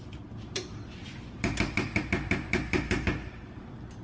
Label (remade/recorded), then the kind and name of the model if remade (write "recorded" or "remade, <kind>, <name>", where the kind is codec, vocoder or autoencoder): recorded